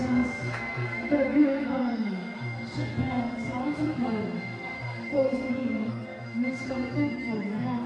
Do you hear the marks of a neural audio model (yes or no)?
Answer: yes